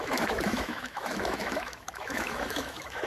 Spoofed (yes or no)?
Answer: yes